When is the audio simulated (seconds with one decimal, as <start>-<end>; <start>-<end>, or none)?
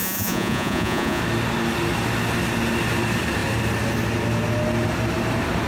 0.0-1.2